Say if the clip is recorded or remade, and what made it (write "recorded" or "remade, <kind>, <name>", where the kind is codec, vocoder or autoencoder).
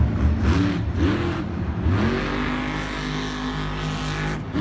recorded